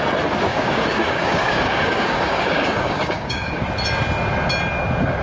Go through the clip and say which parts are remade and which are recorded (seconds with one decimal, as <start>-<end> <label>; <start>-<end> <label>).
0.0-0.5 recorded; 0.5-3.6 remade; 3.6-5.2 recorded